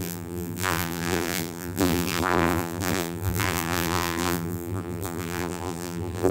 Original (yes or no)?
no